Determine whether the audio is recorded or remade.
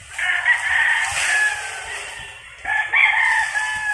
recorded